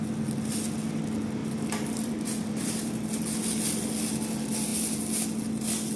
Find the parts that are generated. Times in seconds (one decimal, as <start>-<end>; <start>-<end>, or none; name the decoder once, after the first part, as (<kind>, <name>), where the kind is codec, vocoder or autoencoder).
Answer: 1.4-3.2 (vocoder, BigVGAN v2)